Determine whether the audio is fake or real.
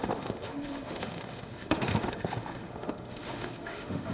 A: fake